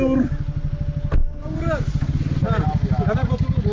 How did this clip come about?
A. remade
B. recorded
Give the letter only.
B